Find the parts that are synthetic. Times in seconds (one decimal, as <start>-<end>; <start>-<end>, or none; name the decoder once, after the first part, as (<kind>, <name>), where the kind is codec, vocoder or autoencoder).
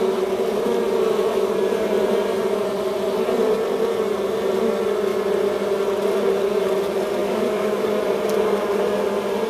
7.2-8.0 (codec, DAC)